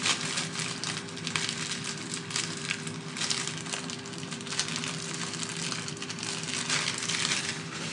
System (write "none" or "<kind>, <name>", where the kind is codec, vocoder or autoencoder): none